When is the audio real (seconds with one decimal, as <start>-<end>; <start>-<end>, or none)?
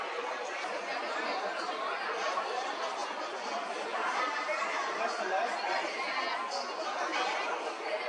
0.0-3.9; 5.8-7.1